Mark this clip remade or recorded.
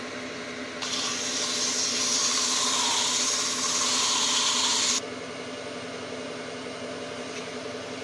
recorded